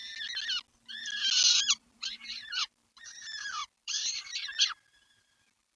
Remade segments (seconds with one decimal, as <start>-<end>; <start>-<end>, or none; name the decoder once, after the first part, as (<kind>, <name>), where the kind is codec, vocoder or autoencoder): 1.5-5.8 (vocoder, BigVGAN v2)